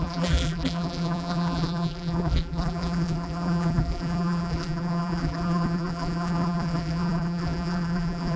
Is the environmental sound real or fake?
fake